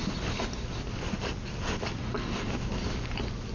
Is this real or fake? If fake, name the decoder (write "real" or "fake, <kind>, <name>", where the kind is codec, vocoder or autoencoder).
real